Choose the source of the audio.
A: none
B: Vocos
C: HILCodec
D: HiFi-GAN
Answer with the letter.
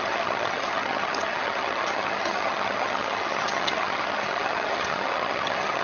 D